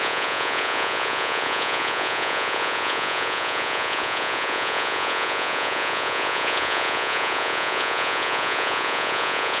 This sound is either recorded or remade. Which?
remade